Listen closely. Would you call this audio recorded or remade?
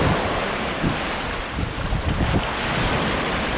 recorded